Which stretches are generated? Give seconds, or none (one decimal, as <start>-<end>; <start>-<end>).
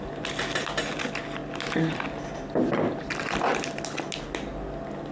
none